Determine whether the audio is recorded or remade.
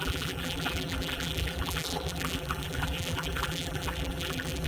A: remade